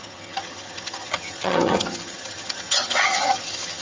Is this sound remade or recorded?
remade